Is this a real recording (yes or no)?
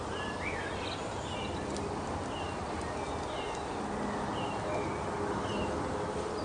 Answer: yes